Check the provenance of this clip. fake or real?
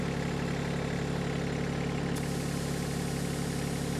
real